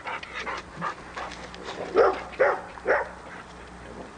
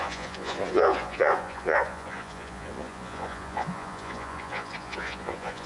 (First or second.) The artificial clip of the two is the second